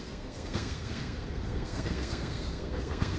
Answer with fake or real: fake